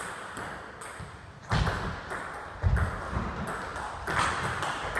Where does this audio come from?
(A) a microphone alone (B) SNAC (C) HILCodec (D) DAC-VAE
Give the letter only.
A